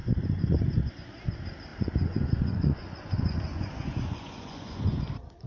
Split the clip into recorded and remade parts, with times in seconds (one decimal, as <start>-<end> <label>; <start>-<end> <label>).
0.0-0.9 remade; 0.9-1.7 recorded; 1.7-5.0 remade; 5.0-5.5 recorded